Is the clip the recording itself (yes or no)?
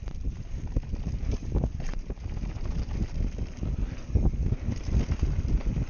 yes